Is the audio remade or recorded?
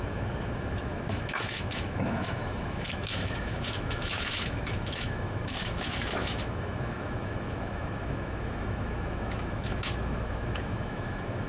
remade